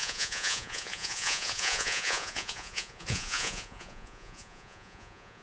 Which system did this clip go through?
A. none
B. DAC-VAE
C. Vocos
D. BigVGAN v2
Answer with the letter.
C